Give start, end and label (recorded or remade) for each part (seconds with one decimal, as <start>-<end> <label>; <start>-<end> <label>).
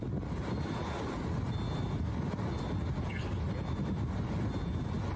0.0-5.2 recorded